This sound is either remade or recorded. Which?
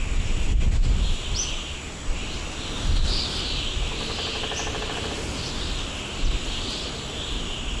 recorded